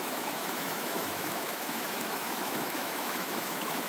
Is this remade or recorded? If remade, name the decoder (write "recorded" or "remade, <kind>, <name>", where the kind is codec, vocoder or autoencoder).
remade, autoencoder, DAC-VAE